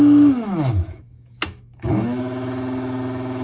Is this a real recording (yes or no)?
no